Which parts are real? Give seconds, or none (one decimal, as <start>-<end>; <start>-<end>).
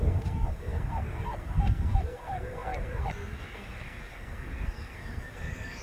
none